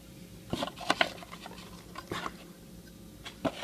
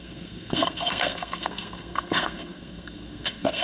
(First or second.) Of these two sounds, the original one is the first